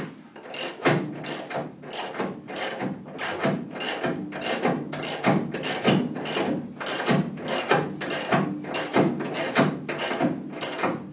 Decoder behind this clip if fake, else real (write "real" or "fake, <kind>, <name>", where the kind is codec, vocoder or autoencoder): real